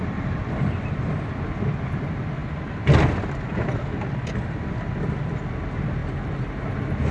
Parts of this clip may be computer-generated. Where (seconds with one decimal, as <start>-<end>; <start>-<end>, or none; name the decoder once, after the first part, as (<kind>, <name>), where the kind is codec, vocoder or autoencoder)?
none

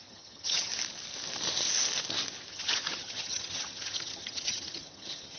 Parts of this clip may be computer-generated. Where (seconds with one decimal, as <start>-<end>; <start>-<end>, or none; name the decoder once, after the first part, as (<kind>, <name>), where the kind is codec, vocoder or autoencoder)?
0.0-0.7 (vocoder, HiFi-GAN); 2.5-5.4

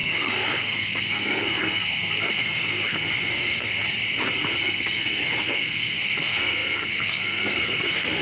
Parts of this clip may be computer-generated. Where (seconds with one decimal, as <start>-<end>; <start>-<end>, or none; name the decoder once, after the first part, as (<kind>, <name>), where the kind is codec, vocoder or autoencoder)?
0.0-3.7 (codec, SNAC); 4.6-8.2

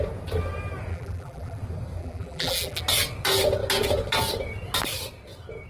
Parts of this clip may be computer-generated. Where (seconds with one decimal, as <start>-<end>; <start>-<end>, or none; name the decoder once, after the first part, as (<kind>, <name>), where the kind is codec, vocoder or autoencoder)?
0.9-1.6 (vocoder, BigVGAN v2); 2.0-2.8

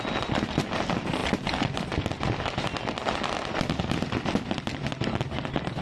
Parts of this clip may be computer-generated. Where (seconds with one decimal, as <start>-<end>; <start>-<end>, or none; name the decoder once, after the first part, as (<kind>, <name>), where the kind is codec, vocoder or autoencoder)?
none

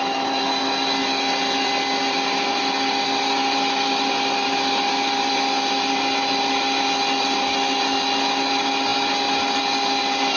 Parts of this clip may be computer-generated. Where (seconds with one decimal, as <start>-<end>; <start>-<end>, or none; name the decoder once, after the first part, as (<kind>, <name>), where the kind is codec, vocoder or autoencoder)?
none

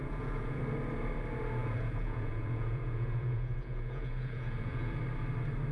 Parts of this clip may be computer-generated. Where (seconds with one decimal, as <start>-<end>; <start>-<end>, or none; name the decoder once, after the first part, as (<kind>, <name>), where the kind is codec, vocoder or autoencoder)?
0.0-0.6 (vocoder, Vocos); 1.6-5.0

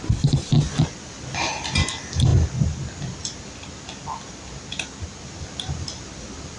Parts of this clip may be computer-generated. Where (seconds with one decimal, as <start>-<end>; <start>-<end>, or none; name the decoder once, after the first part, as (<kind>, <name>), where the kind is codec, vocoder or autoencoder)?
none